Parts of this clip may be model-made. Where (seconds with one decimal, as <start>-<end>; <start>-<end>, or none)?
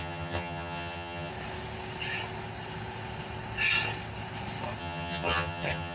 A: 0.0-1.3; 4.8-5.9